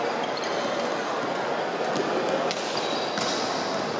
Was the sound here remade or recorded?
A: recorded